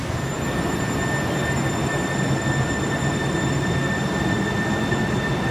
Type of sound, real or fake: real